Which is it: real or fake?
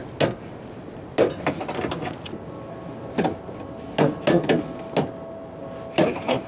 real